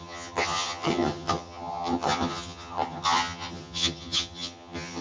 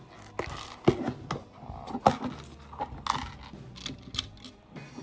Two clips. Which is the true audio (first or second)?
second